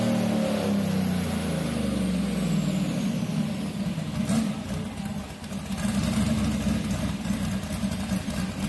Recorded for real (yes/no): yes